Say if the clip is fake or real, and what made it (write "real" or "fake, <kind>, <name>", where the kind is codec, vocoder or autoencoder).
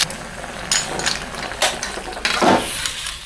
real